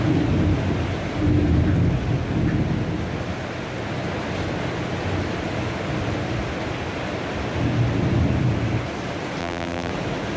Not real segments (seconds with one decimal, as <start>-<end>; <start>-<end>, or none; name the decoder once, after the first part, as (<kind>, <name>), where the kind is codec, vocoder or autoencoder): 9.4-9.9 (vocoder, BigVGAN v2)